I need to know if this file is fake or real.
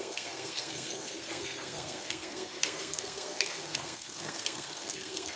fake